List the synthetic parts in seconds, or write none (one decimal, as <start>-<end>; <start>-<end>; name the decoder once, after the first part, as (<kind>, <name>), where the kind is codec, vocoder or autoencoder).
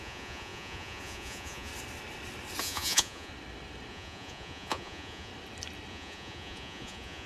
0.0-1.7 (vocoder, Vocos); 2.6-3.3; 3.9-5.3; 5.9-7.3